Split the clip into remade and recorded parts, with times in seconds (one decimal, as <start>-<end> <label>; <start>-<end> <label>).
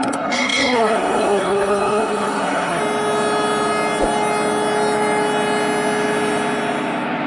0.0-2.8 remade; 2.8-7.3 recorded